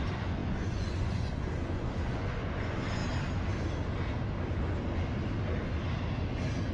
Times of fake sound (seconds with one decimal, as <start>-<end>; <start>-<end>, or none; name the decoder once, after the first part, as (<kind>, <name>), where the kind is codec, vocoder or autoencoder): 0.0-3.0 (vocoder, Vocos)